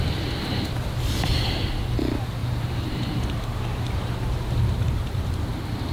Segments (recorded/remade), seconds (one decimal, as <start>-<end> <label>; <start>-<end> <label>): 0.0-2.4 recorded; 2.4-5.9 remade